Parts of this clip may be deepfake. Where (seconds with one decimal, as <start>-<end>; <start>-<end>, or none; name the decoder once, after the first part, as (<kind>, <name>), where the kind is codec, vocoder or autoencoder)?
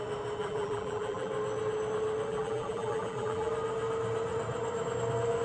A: 0.4-1.3 (vocoder, BigVGAN v2); 2.3-3.5